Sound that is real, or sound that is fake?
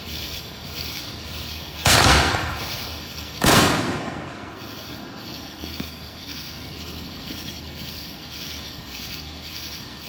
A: fake